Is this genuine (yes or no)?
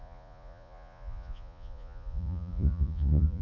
no